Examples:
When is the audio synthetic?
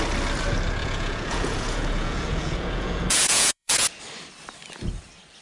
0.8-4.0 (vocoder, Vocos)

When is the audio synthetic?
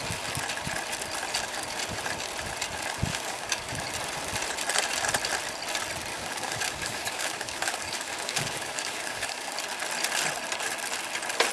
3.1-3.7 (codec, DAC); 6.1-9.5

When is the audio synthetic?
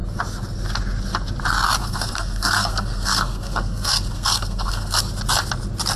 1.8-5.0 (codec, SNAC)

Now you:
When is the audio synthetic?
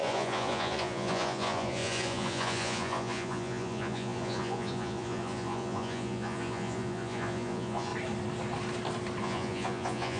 0.0-7.9 (vocoder, Vocos); 9.2-10.2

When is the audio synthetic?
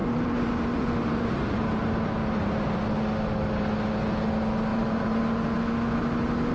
0.0-1.8 (vocoder, BigVGAN v2); 2.2-2.8; 4.7-5.2